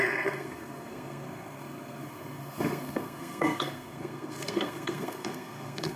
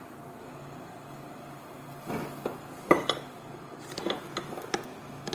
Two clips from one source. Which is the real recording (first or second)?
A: second